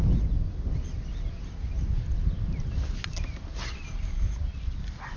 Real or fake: real